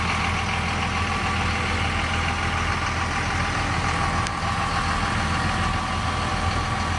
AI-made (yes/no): no